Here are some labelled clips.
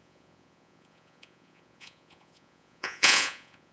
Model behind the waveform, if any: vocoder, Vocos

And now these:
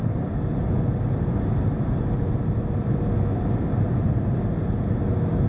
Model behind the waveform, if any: none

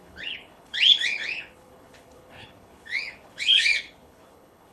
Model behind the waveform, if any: codec, HILCodec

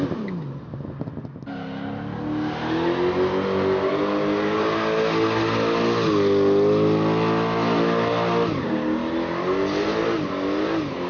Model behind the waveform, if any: none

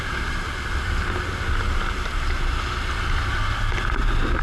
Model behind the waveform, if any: none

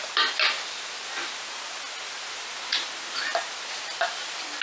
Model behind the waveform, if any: none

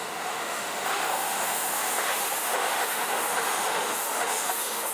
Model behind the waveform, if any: autoencoder, DAC-VAE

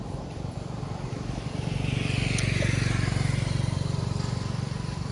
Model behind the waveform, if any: none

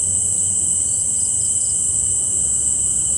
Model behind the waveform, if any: none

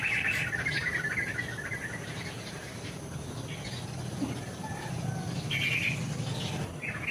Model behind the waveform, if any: none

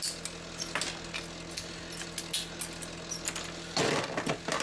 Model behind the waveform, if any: none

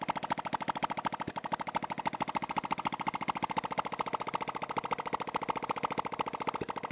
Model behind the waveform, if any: none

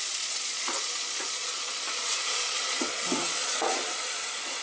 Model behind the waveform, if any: vocoder, Vocos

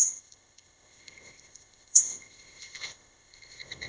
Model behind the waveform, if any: codec, ZipCodec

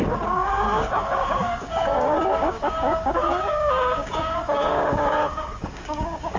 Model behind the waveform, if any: codec, DAC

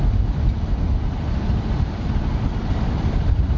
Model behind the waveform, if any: none